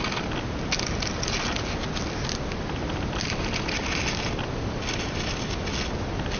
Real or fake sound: real